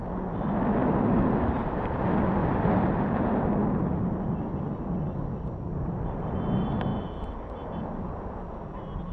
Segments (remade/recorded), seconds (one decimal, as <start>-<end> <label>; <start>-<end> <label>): 0.0-0.8 recorded; 0.8-1.9 remade; 1.9-9.1 recorded